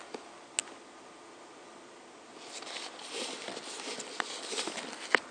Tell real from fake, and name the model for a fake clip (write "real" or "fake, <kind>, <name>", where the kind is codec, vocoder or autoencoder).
real